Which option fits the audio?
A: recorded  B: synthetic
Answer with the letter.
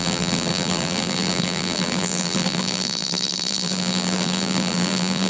B